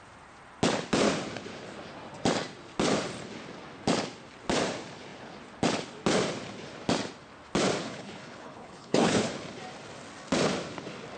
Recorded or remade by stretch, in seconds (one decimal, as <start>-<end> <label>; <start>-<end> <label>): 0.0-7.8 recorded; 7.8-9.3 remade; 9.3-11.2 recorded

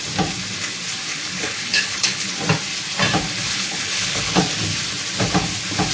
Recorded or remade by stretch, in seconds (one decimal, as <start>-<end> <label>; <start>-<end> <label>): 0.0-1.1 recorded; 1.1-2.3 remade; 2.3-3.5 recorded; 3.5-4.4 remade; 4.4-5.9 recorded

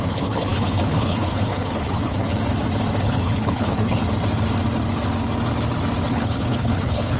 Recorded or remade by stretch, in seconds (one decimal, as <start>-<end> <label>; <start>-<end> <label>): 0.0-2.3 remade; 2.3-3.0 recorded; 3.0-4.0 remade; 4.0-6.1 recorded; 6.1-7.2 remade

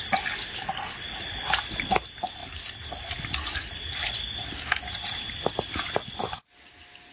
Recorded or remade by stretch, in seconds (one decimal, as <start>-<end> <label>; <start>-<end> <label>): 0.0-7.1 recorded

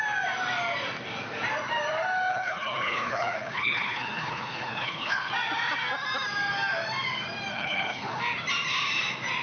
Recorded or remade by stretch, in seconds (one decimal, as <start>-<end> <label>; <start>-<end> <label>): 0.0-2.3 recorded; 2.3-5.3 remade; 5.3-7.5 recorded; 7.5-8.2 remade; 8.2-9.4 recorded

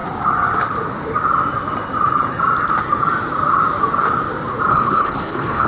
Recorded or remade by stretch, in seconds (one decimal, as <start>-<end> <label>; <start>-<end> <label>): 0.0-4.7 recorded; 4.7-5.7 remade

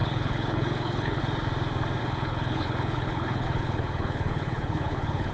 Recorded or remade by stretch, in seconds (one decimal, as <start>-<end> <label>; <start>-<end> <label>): 0.0-1.2 remade; 1.2-2.0 recorded; 2.0-5.3 remade